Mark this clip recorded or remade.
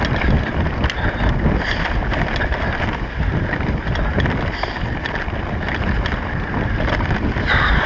recorded